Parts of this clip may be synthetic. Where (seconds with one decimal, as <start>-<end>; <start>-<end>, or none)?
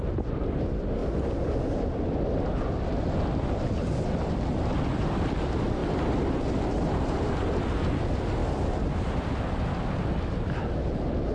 none